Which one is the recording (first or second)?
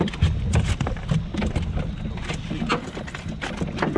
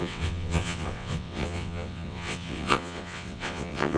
first